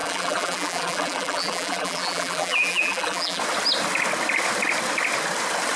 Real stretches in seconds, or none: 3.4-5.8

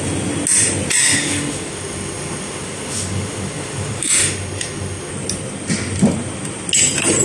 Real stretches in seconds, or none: 0.0-1.0; 5.1-7.2

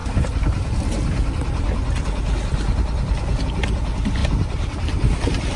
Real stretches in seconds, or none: 0.0-4.2

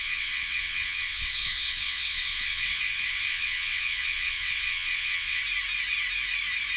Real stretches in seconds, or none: 5.4-6.8

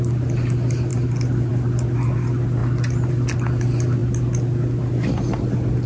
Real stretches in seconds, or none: 0.0-5.9